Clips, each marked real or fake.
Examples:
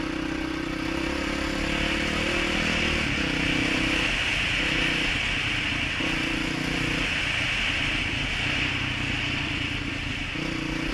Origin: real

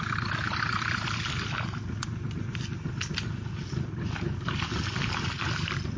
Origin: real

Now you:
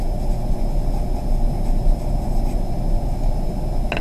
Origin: real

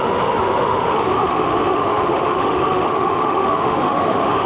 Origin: fake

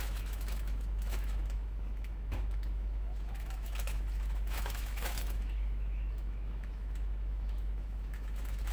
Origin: fake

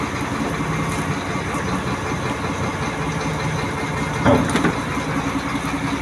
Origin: real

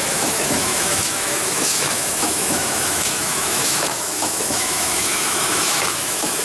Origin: fake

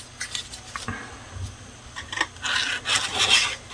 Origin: real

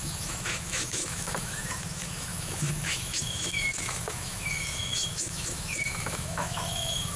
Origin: fake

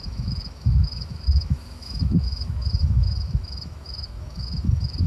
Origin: fake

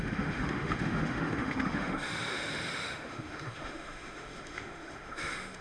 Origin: fake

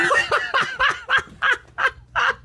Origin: real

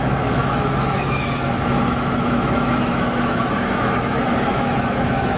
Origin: fake